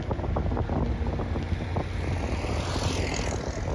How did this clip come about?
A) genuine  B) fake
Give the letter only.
A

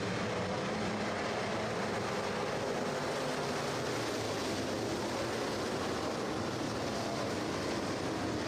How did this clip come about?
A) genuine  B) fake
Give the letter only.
A